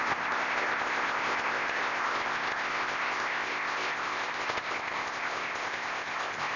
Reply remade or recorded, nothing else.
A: remade